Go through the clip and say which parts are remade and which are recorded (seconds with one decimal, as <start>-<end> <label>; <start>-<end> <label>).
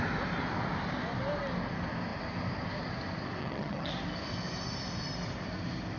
0.0-3.4 recorded; 3.4-3.9 remade; 3.9-6.0 recorded